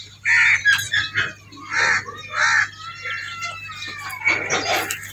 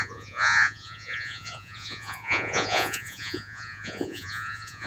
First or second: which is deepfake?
second